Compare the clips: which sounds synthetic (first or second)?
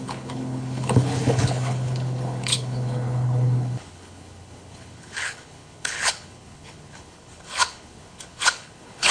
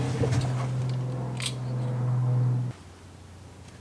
first